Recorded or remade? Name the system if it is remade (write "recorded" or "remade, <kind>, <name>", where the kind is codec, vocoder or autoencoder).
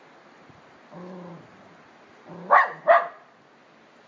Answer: recorded